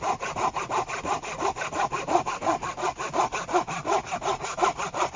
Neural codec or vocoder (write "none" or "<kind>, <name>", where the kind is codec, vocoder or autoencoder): none